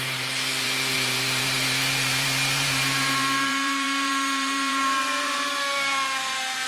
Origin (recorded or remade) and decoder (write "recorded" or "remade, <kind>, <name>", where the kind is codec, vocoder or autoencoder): remade, vocoder, BigVGAN v2